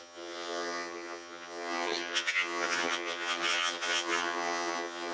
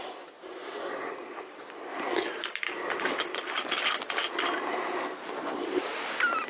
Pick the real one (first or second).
second